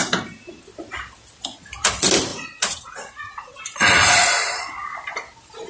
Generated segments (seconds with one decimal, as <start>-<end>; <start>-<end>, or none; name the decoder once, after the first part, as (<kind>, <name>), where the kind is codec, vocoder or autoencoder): 2.3-3.6 (vocoder, Vocos)